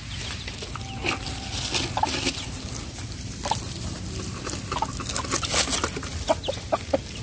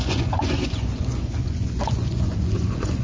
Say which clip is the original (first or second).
first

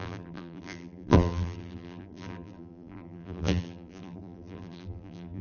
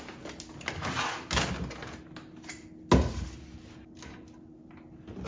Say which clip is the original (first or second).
second